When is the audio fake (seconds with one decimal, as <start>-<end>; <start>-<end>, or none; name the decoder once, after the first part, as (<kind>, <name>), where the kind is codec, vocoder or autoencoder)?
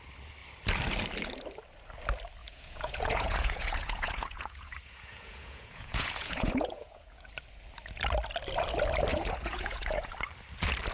2.4-7.3 (vocoder, Vocos); 9.1-10.1